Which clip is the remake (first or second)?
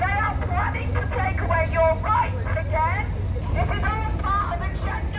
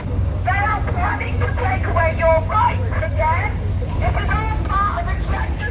second